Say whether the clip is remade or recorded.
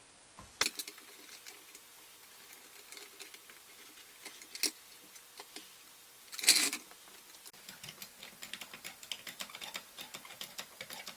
recorded